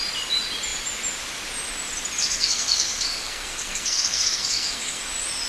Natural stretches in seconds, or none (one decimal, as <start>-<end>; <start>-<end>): 0.0-2.2; 5.1-5.5